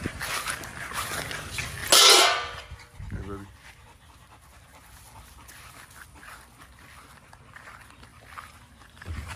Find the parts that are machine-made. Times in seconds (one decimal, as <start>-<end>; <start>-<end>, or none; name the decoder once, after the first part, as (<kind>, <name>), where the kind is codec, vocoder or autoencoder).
8.1-9.4 (vocoder, BigVGAN v2)